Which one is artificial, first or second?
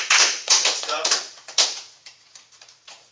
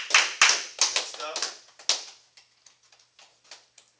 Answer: first